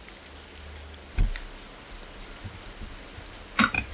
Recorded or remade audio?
recorded